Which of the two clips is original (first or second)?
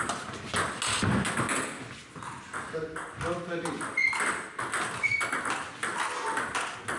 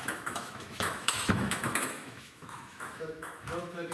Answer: first